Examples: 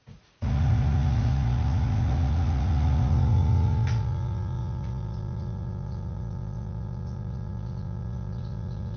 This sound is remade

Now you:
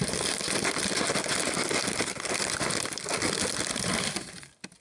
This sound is recorded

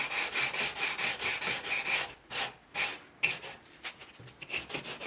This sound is recorded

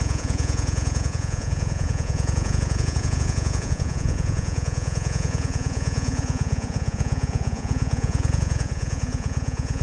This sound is remade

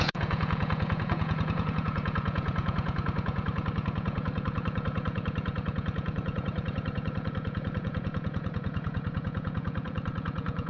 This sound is remade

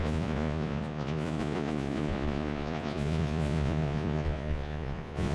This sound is remade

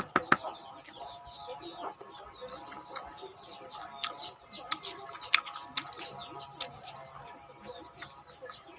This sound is recorded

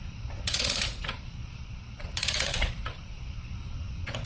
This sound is remade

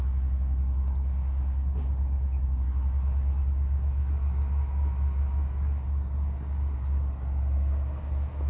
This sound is recorded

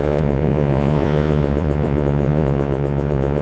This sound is remade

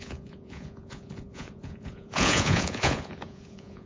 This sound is remade